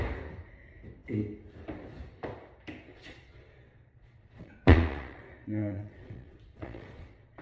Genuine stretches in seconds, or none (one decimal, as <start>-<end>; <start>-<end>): 0.0-2.9